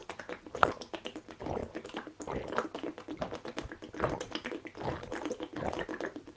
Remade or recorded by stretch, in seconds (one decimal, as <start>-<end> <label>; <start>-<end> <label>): 0.0-6.4 recorded